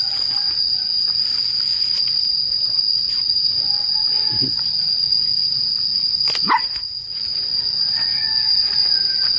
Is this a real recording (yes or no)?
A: yes